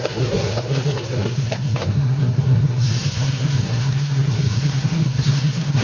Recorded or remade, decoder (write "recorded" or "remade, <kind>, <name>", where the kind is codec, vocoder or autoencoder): remade, codec, SNAC